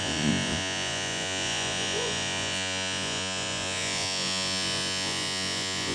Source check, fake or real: fake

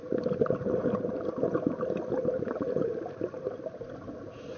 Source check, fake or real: real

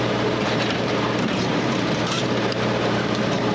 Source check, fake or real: fake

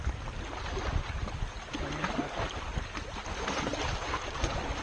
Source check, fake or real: real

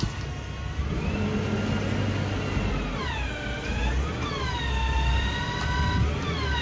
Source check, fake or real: real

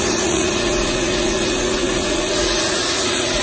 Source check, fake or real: fake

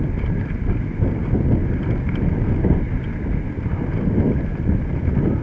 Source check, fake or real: real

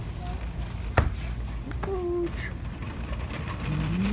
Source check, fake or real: real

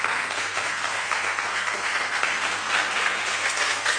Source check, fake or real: fake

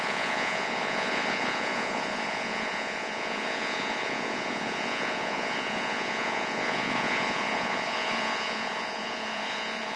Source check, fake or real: fake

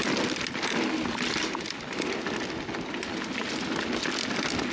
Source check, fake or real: real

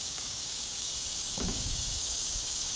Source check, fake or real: fake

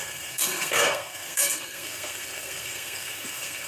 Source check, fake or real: fake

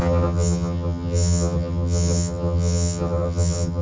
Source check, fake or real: fake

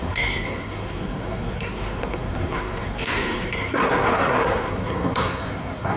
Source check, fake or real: fake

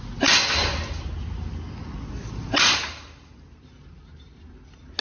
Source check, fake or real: real